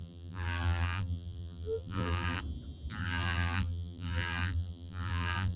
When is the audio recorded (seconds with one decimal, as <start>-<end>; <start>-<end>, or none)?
2.4-3.0